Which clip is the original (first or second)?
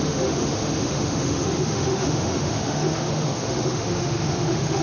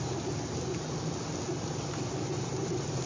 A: second